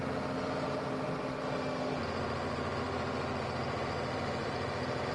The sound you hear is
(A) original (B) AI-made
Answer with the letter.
A